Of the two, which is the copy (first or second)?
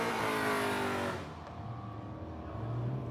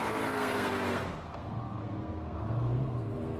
second